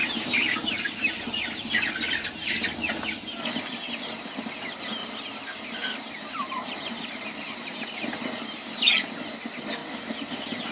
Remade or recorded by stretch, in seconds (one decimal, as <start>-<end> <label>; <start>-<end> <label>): 0.0-1.2 remade; 1.2-5.0 recorded; 5.0-8.1 remade; 8.1-10.7 recorded